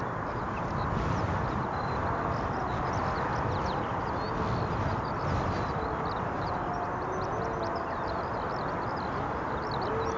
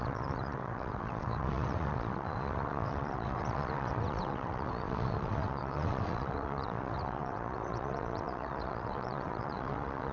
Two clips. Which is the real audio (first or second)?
first